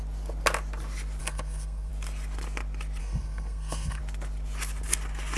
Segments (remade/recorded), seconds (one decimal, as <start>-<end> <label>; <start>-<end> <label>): 0.0-1.2 recorded; 1.2-1.9 remade; 1.9-3.0 recorded; 3.0-4.0 remade; 4.0-5.4 recorded